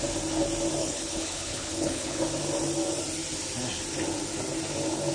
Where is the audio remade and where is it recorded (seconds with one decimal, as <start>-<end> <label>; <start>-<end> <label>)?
0.0-0.8 recorded; 0.8-2.2 remade; 2.2-5.1 recorded

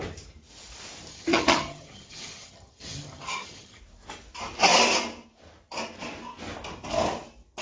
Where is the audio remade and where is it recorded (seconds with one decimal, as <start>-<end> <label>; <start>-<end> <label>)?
0.0-1.1 recorded; 1.1-3.8 remade; 3.8-7.6 recorded

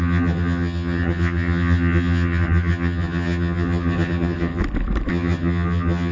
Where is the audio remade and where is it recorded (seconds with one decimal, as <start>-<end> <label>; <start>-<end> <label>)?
0.0-4.6 remade; 4.6-5.1 recorded; 5.1-6.1 remade

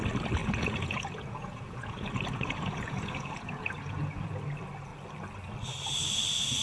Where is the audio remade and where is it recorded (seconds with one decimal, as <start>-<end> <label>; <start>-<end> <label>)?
0.0-0.4 recorded; 0.4-4.4 remade; 4.4-6.6 recorded

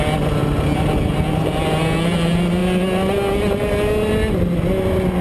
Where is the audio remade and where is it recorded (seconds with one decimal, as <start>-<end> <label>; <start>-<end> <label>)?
0.0-5.2 recorded

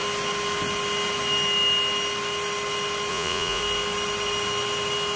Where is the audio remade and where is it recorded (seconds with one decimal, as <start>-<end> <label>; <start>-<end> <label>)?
0.0-3.1 recorded; 3.1-3.6 remade; 3.6-5.2 recorded

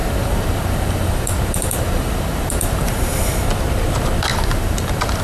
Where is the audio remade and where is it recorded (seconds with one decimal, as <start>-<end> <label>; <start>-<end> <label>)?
0.0-3.1 remade; 3.1-4.3 recorded; 4.3-5.2 remade

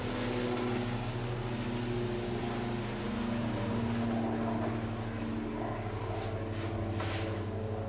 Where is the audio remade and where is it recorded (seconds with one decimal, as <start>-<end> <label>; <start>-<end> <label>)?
0.0-7.9 recorded